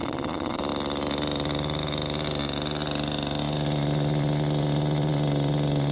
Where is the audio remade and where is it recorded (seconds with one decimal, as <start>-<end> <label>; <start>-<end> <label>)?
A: 0.0-0.6 remade; 0.6-5.9 recorded